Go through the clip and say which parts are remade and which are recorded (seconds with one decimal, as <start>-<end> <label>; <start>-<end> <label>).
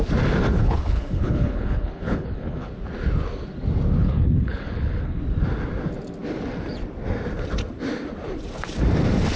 0.0-0.6 recorded; 0.6-2.7 remade; 2.7-4.0 recorded; 4.0-5.2 remade; 5.2-9.4 recorded